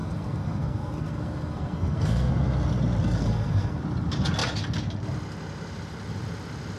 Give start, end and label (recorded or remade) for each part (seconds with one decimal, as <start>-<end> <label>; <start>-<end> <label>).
0.0-2.3 remade; 2.3-3.0 recorded; 3.0-3.8 remade; 3.8-6.8 recorded